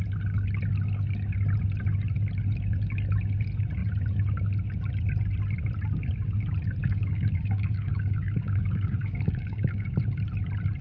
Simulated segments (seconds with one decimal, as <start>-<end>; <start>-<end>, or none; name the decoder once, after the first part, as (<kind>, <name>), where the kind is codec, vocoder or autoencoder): 6.8-10.0 (codec, DAC)